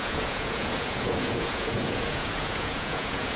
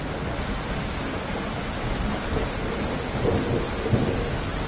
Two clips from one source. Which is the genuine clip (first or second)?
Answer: second